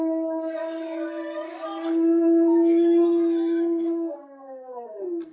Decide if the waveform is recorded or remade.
remade